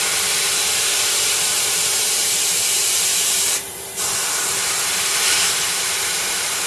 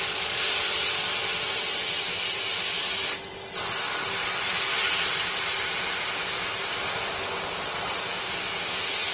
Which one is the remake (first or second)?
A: first